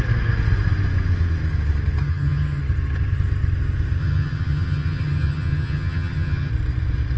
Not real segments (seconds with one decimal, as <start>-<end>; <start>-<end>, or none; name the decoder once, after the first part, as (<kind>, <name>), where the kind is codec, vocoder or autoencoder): 2.0-2.6 (vocoder, HiFi-GAN); 4.0-6.5